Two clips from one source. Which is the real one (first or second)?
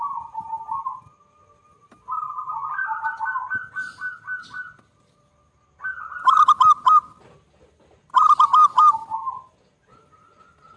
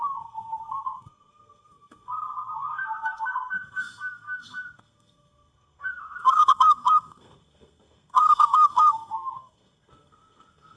first